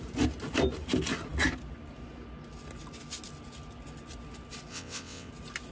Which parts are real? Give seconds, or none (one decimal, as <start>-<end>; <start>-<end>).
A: 0.0-4.7; 5.3-5.7